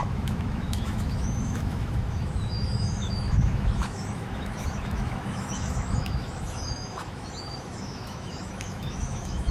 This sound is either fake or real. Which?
fake